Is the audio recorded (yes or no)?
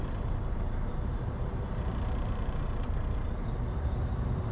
no